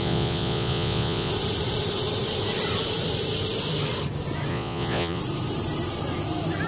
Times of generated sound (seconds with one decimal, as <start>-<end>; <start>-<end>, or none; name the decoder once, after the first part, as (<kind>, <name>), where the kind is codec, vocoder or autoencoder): 0.0-1.3 (vocoder, Vocos); 4.5-5.2